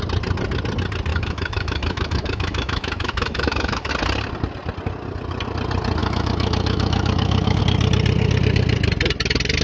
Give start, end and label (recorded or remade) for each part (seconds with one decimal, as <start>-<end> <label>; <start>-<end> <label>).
0.0-1.1 recorded; 1.1-3.9 remade; 3.9-6.0 recorded; 6.0-7.6 remade; 7.6-9.6 recorded